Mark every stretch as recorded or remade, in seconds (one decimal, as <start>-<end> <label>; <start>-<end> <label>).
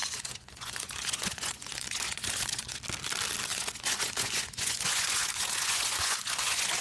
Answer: 0.0-2.8 remade; 2.8-3.5 recorded; 3.5-6.8 remade